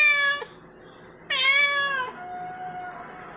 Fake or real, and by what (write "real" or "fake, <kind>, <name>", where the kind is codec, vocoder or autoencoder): real